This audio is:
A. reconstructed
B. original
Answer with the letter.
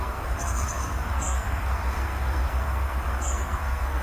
A